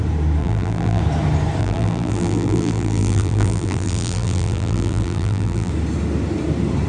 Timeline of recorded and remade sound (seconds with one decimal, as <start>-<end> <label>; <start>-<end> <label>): 0.0-0.4 recorded; 0.4-1.0 remade; 1.0-1.6 recorded; 1.6-5.7 remade; 5.7-6.9 recorded